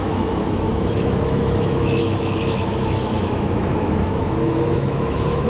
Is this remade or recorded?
remade